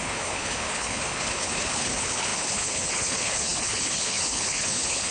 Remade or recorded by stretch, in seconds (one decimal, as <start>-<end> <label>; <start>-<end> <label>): 0.0-5.1 remade